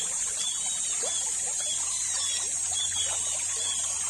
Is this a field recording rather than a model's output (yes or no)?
yes